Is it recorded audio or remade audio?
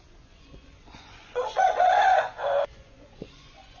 remade